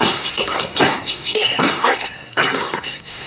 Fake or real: fake